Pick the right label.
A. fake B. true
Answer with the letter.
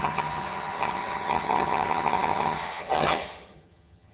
A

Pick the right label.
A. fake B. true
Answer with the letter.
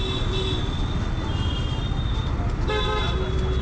B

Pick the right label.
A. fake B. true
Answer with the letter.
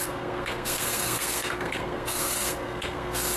A